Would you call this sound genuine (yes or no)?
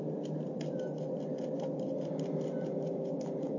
yes